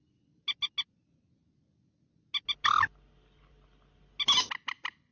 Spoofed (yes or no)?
no